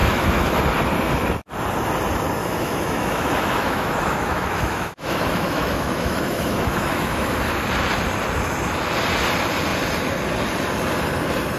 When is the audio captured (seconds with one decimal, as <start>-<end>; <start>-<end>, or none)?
0.6-2.4; 7.5-11.6